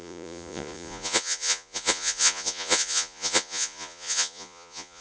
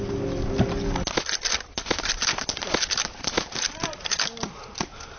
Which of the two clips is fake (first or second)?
first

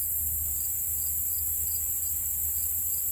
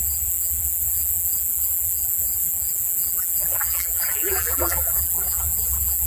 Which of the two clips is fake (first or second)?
second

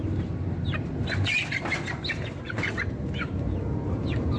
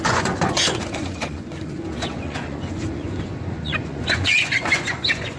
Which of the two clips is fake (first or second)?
second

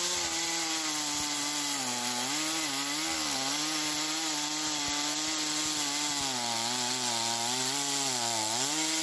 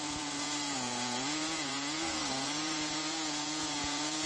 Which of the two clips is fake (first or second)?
second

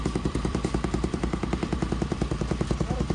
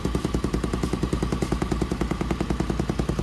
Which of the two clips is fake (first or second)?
first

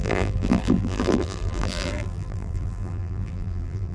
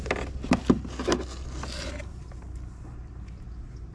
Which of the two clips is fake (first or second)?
first